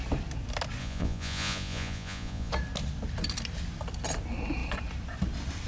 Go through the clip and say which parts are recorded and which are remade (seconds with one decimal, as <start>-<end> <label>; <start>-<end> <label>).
0.0-0.8 recorded; 0.8-2.5 remade; 2.5-5.7 recorded